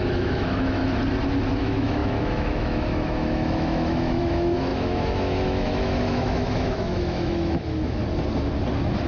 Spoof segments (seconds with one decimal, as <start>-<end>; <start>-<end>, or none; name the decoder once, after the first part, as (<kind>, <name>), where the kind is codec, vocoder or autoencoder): 0.0-0.8 (autoencoder, DAC-VAE); 1.6-8.0